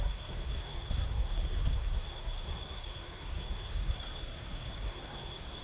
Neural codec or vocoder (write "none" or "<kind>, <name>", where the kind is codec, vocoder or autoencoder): codec, SNAC